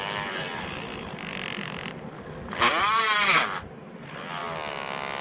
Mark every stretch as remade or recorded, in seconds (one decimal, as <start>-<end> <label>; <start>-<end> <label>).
0.0-0.9 remade; 0.9-2.8 recorded; 2.8-4.4 remade; 4.4-5.2 recorded